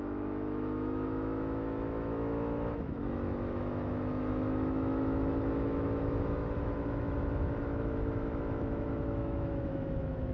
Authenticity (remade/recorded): remade